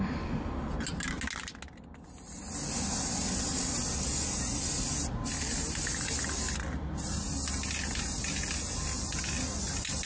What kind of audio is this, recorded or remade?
recorded